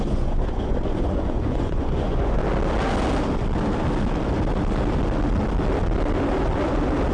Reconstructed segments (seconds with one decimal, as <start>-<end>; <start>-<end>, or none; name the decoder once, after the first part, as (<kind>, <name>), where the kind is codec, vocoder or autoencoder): 0.0-2.4 (vocoder, Vocos)